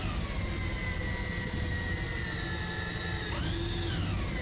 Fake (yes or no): no